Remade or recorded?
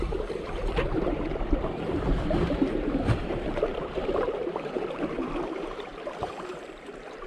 remade